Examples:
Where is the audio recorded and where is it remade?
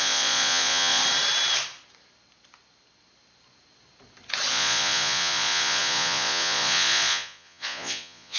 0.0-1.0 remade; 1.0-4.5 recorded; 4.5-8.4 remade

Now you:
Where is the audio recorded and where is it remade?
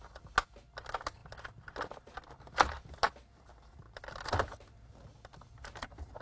0.0-6.2 recorded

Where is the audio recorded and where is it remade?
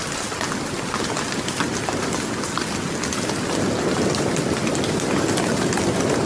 0.0-6.3 recorded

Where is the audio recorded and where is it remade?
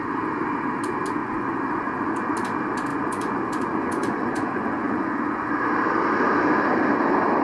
0.0-1.2 recorded; 1.2-2.1 remade; 2.1-2.9 recorded; 2.9-5.6 remade; 5.6-7.4 recorded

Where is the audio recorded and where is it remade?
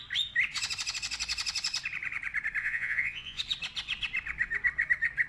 0.0-2.6 recorded; 2.6-3.4 remade; 3.4-5.3 recorded